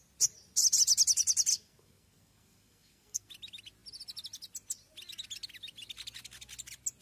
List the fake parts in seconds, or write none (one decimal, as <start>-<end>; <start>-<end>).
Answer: 1.5-3.3